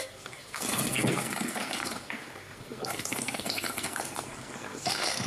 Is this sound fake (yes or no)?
yes